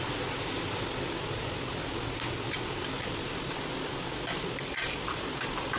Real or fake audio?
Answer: real